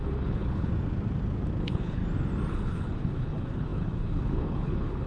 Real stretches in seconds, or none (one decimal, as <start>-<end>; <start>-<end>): 0.7-1.6; 2.0-2.5